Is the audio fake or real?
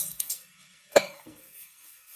fake